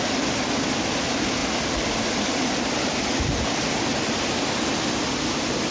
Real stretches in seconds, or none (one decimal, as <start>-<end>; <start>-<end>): 0.0-5.7